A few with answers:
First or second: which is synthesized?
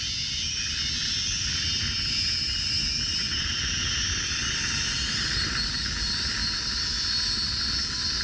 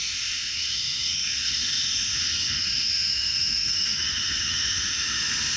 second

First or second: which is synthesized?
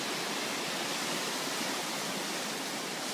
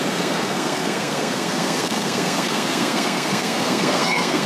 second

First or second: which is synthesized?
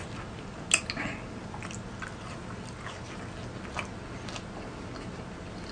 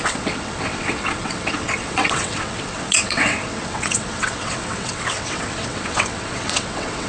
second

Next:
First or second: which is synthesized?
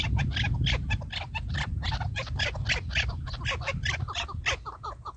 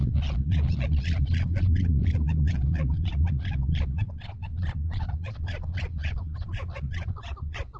second